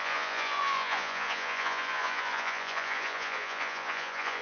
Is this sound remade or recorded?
remade